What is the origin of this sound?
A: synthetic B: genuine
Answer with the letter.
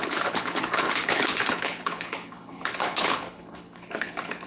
A